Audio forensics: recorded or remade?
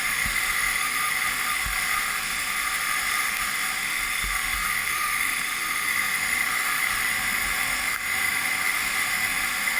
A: remade